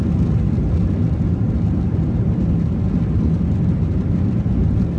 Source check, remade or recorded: recorded